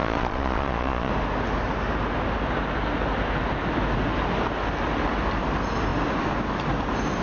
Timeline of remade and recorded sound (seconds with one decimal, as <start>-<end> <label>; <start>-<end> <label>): 0.0-1.1 remade; 1.1-7.2 recorded